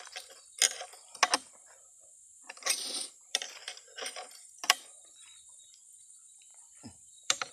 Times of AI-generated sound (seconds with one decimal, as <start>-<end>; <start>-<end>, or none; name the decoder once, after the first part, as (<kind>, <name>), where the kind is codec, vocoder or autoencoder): 2.3-5.8 (vocoder, BigVGAN v2); 6.5-7.5